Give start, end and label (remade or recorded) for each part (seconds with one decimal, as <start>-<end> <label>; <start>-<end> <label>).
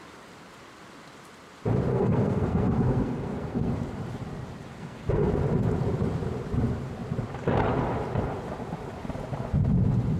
0.0-1.9 recorded; 1.9-3.7 remade; 3.7-4.7 recorded; 4.7-5.3 remade; 5.3-10.2 recorded